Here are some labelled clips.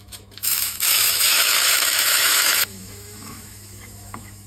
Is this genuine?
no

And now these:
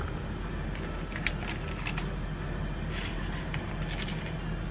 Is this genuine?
yes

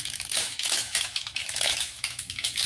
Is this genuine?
no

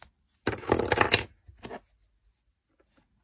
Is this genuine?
yes